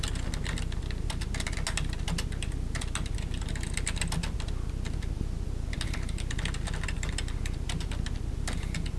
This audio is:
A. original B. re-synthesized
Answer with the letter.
A